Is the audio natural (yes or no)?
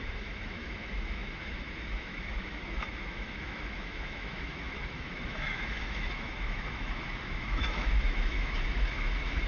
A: no